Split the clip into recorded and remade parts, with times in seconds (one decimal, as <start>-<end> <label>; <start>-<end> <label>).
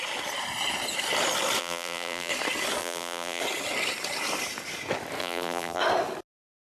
0.0-1.6 recorded; 1.6-2.3 remade; 2.3-2.8 recorded; 2.8-3.4 remade; 3.4-5.2 recorded; 5.2-5.8 remade; 5.8-6.6 recorded